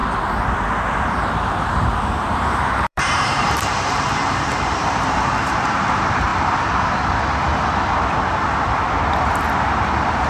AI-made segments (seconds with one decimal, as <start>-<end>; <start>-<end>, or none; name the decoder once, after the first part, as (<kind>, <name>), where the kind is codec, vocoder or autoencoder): 0.5-6.3 (vocoder, BigVGAN v2)